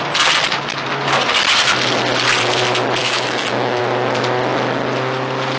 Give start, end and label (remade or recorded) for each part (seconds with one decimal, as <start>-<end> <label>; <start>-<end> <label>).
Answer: 0.0-3.0 recorded; 3.0-3.8 remade; 3.8-5.6 recorded